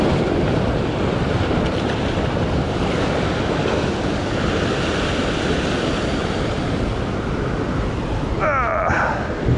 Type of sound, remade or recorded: recorded